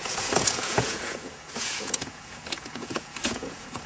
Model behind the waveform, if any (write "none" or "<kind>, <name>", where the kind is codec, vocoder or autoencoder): vocoder, Vocos